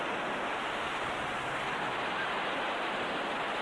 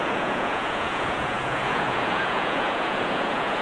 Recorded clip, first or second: first